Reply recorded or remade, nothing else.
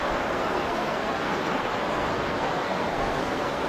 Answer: remade